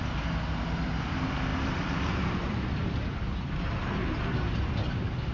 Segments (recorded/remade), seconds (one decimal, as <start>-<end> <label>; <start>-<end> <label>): 0.0-5.3 recorded

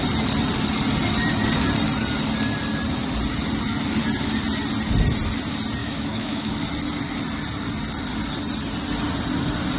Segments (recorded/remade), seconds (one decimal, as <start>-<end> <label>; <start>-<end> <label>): 0.0-5.8 recorded; 5.8-6.5 remade; 6.5-9.8 recorded

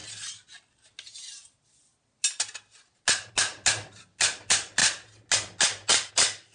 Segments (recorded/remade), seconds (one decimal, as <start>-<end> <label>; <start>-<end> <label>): 0.0-6.5 recorded

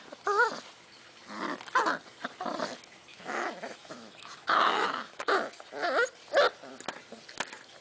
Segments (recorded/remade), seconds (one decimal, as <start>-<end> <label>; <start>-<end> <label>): 0.0-3.1 recorded; 3.1-5.3 remade; 5.3-7.8 recorded

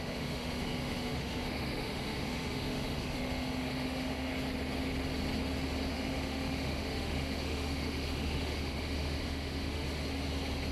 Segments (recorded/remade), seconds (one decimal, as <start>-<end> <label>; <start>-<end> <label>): 0.0-4.3 remade; 4.3-5.9 recorded; 5.9-10.0 remade; 10.0-10.7 recorded

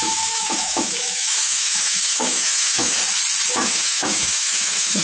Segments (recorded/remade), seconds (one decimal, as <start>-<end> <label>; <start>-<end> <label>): 0.0-3.0 remade; 3.0-3.5 recorded; 3.5-5.0 remade